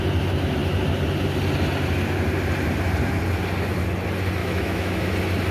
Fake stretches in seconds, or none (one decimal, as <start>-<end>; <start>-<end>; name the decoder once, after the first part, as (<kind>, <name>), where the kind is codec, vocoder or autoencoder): 4.4-5.1 (autoencoder, DAC-VAE)